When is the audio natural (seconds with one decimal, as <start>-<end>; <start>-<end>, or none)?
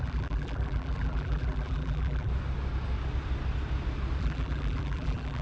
2.3-4.2